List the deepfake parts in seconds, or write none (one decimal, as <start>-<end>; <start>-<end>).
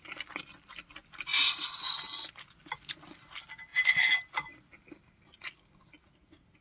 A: none